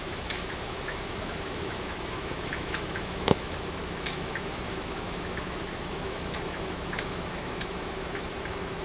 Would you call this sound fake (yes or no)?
yes